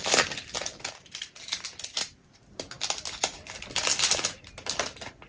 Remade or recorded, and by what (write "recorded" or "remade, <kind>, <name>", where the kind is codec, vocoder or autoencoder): recorded